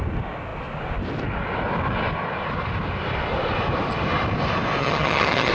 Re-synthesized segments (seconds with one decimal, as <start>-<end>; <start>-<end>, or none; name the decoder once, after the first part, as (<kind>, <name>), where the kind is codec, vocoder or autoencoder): 4.8-5.5 (vocoder, HiFi-GAN)